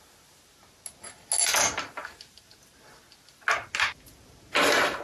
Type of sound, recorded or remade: recorded